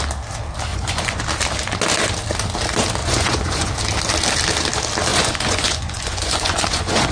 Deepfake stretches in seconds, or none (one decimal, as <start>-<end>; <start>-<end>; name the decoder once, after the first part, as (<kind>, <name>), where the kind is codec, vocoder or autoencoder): 0.7-1.2 (vocoder, Vocos); 3.0-3.7; 5.1-7.1

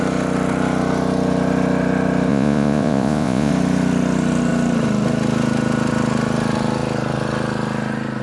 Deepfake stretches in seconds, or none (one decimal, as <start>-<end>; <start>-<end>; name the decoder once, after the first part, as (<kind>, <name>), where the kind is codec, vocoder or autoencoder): 2.3-3.5 (vocoder, Vocos)

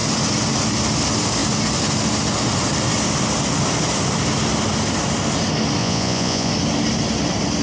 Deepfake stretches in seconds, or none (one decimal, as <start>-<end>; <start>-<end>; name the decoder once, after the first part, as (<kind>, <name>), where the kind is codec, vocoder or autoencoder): 5.8-6.5 (vocoder, Vocos)

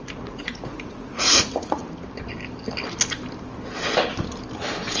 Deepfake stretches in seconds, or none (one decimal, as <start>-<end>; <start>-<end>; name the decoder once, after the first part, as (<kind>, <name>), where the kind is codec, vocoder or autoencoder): 0.0-1.8 (vocoder, Vocos)

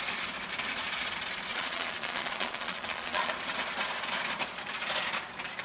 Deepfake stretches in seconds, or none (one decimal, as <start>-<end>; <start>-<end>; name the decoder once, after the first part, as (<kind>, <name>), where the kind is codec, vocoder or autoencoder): 1.5-3.3 (vocoder, Vocos)

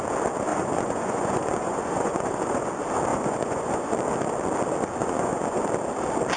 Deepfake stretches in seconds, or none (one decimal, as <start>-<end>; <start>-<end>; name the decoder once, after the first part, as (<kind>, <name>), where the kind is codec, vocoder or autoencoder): 0.5-2.7 (vocoder, Vocos); 3.1-3.9; 5.0-5.6

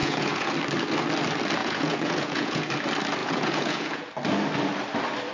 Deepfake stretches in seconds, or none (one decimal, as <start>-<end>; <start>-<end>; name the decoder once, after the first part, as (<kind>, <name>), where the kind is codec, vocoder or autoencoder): 0.0-0.5 (vocoder, Vocos); 1.6-2.7; 3.2-4.1